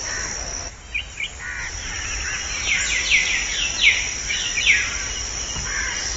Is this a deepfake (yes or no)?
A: no